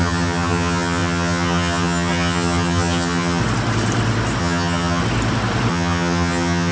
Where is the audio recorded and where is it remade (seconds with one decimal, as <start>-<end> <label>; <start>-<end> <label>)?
0.0-3.4 remade; 3.4-4.4 recorded; 4.4-5.0 remade; 5.0-5.7 recorded; 5.7-6.7 remade